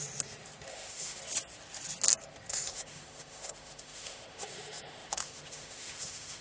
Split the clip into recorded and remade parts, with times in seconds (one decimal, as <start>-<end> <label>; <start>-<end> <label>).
0.0-0.7 recorded; 0.7-1.2 remade; 1.2-2.5 recorded; 2.5-6.4 remade